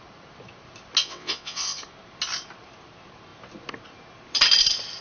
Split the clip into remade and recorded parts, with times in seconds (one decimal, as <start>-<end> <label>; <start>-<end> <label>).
0.0-1.0 recorded; 1.0-1.8 remade; 1.8-5.0 recorded